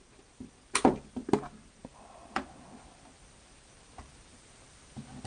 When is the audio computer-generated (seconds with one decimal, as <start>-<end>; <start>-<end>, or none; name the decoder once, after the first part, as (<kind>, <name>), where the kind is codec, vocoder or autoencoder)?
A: none